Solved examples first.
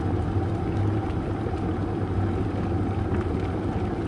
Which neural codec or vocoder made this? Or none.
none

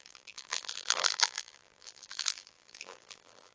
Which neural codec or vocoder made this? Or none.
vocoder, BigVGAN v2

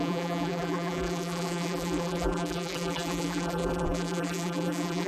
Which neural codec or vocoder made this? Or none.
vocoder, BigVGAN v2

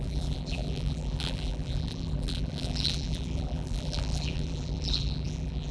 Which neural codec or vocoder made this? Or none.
vocoder, BigVGAN v2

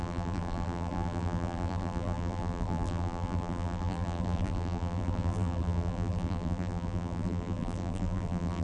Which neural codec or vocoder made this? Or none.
vocoder, BigVGAN v2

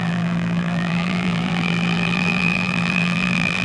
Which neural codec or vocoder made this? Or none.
vocoder, BigVGAN v2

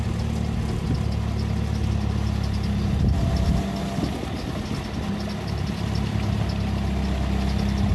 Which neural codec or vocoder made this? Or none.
none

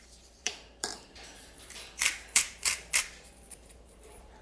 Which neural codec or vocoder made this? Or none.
vocoder, BigVGAN v2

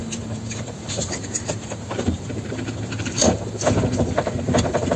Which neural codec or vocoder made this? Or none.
vocoder, BigVGAN v2